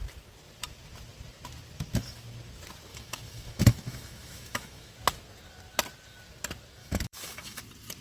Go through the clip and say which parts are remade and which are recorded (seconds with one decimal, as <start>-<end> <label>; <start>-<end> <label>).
0.0-2.9 recorded; 2.9-4.9 remade; 4.9-6.8 recorded; 6.8-7.6 remade; 7.6-8.0 recorded